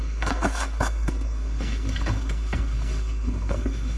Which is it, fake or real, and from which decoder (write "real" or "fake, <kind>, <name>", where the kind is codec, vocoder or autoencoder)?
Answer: fake, codec, SNAC